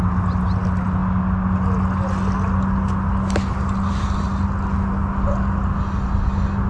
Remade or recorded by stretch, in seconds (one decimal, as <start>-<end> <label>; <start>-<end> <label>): 0.0-6.7 recorded